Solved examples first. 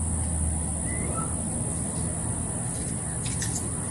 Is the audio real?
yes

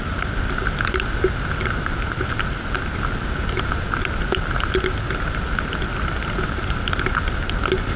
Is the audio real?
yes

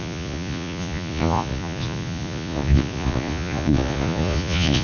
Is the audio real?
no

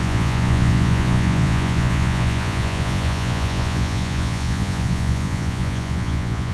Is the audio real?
no